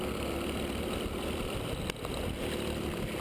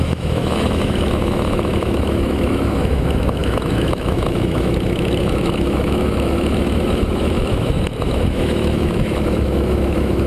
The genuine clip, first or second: first